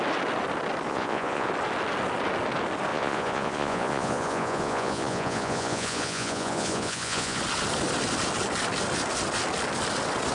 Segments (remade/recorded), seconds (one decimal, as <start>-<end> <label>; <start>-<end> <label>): 0.0-0.9 recorded; 0.9-1.5 remade; 1.5-2.9 recorded; 2.9-7.4 remade; 7.4-10.3 recorded